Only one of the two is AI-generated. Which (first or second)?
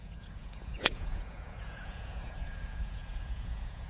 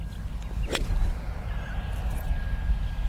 first